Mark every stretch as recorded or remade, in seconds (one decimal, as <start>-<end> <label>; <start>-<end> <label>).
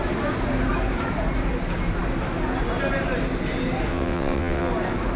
0.0-3.9 recorded; 3.9-4.7 remade; 4.7-5.2 recorded